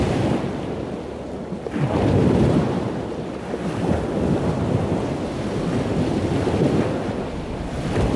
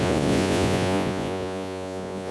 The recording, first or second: first